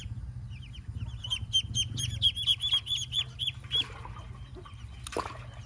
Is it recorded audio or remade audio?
recorded